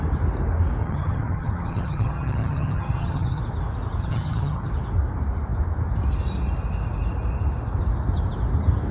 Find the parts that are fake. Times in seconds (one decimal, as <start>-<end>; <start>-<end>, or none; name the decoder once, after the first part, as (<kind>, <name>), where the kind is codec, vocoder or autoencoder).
0.8-3.4 (vocoder, HiFi-GAN); 4.0-4.7